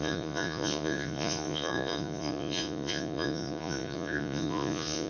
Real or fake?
fake